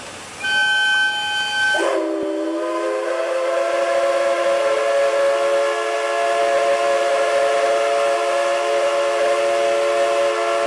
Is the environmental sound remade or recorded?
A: recorded